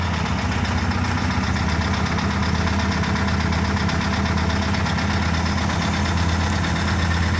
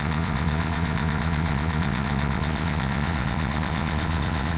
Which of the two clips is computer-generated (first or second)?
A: second